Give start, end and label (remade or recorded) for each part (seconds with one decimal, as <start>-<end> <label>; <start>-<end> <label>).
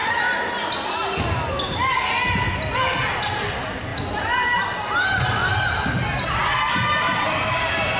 0.0-8.0 recorded